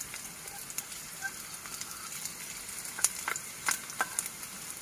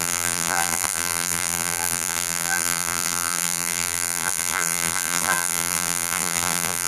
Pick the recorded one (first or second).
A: first